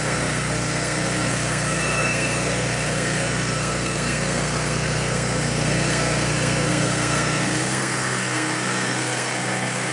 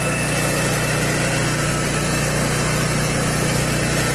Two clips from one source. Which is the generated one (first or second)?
first